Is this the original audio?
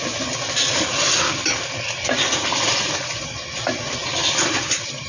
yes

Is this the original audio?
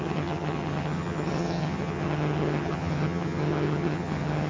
no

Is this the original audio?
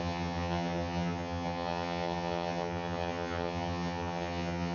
no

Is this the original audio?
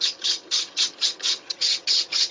no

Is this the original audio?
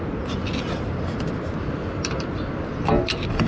yes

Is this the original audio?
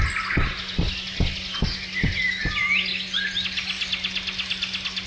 yes